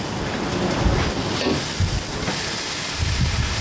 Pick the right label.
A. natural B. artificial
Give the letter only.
A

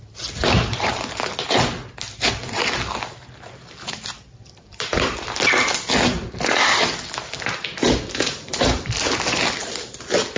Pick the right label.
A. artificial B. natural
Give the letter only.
B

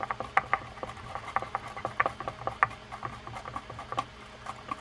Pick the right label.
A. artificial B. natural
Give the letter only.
B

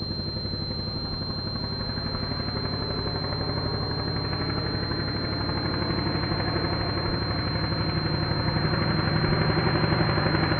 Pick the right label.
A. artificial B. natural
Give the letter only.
B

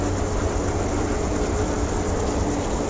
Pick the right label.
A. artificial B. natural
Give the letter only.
B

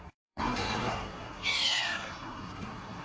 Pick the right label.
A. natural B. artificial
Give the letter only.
B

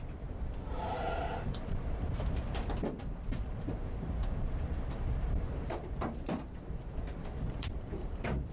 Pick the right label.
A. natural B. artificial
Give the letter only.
B